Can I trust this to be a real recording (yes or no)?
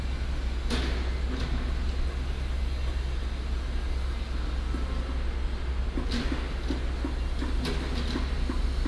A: yes